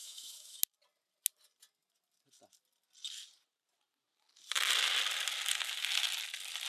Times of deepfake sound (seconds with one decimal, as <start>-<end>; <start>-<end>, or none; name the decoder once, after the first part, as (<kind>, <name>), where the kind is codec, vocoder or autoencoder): 0.0-0.6 (autoencoder, DAC-VAE)